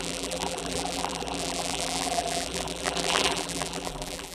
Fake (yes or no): yes